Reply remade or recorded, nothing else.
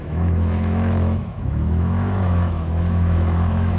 remade